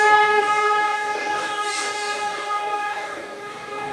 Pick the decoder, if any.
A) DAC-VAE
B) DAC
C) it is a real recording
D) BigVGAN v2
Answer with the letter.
B